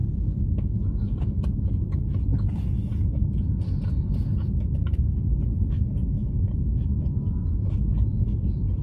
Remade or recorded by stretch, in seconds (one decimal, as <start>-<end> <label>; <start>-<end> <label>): 0.0-1.4 remade; 1.4-6.0 recorded; 6.0-7.3 remade; 7.3-8.8 recorded